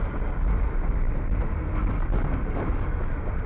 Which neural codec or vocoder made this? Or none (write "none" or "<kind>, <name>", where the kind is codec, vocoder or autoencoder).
vocoder, BigVGAN v2